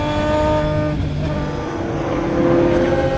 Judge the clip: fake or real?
real